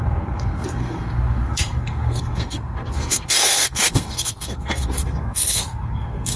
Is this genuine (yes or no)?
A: no